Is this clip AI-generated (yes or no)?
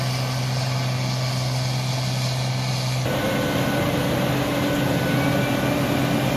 no